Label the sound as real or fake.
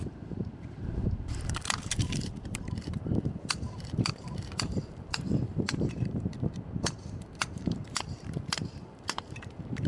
fake